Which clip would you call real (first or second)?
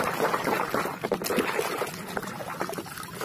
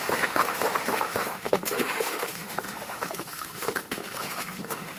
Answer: first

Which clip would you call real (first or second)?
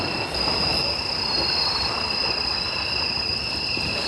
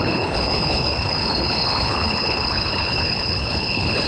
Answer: first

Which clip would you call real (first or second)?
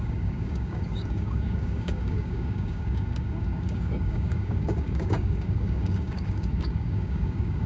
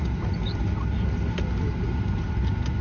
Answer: second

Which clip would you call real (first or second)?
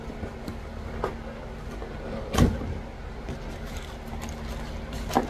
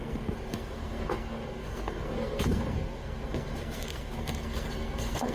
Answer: first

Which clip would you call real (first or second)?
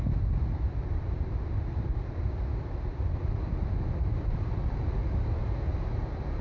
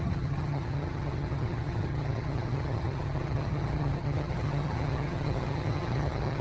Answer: first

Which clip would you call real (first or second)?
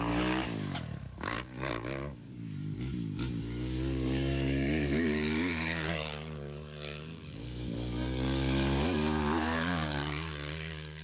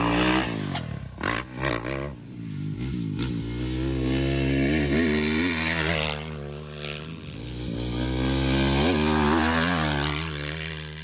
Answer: second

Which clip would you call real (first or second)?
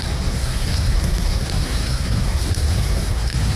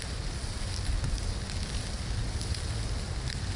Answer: second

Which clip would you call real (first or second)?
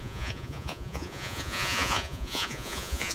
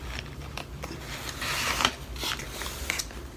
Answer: second